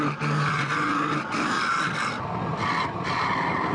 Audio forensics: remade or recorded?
recorded